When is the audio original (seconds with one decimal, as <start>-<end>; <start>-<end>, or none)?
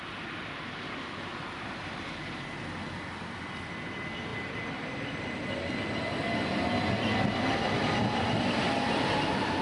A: 0.0-9.6